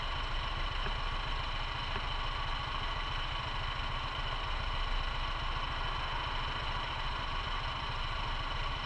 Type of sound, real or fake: real